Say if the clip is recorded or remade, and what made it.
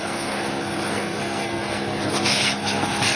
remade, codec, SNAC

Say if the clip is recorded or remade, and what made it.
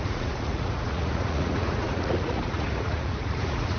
remade, vocoder, Vocos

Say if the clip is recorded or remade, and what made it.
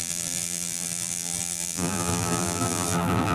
remade, vocoder, BigVGAN v2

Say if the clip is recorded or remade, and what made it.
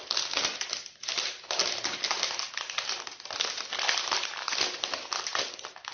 recorded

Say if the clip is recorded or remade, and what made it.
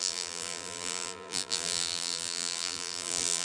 remade, vocoder, BigVGAN v2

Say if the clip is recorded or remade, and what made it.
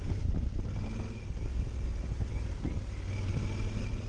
recorded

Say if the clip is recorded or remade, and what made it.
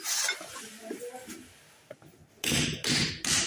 recorded